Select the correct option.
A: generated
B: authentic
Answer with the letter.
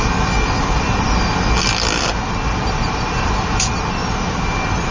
B